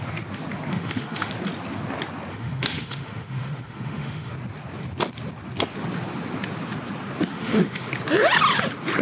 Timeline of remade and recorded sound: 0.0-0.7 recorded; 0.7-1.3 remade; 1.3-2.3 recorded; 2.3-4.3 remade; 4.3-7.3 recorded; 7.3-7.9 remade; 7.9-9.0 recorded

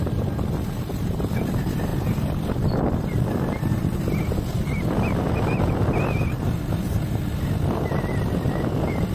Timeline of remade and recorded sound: 0.0-9.1 recorded

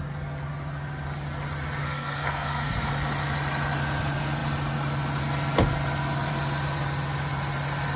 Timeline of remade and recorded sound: 0.0-1.8 recorded; 1.8-2.9 remade; 2.9-8.0 recorded

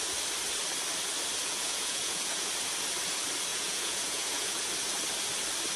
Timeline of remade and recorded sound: 0.0-1.4 recorded; 1.4-2.5 remade; 2.5-3.5 recorded; 3.5-4.7 remade; 4.7-5.8 recorded